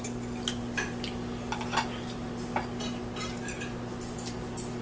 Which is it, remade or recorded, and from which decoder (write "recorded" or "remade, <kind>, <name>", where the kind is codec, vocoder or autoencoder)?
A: recorded